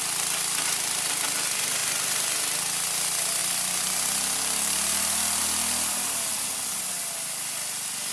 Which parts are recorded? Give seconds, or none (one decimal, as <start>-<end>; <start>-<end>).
0.0-8.1